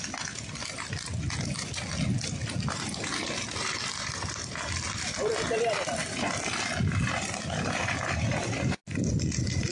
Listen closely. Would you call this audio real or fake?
real